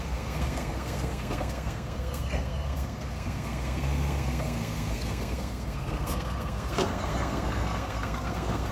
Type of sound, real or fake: fake